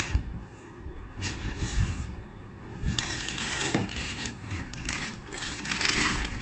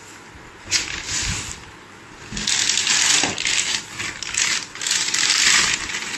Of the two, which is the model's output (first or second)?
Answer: first